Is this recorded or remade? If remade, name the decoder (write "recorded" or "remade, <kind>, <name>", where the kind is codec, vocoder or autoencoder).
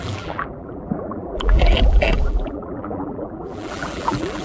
remade, vocoder, BigVGAN v2